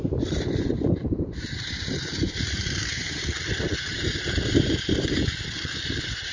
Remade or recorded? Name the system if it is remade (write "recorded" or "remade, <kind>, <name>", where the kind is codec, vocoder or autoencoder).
remade, vocoder, BigVGAN v2